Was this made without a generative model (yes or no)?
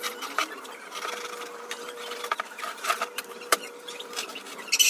no